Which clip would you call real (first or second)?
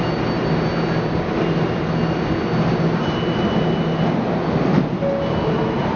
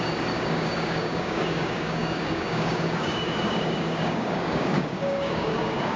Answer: first